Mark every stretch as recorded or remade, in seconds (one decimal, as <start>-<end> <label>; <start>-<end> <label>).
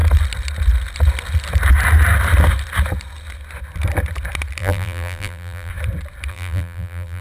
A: 0.0-4.6 recorded; 4.6-5.7 remade; 5.7-6.3 recorded; 6.3-7.2 remade